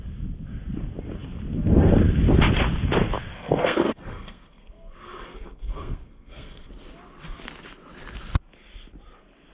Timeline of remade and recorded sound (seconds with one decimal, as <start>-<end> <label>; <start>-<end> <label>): 0.0-3.3 recorded; 3.3-6.7 remade; 6.7-9.5 recorded